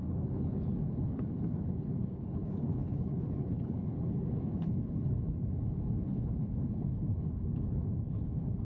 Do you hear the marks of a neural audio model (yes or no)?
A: yes